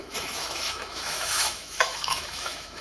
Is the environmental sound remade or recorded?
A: remade